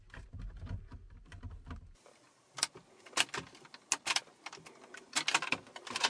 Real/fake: real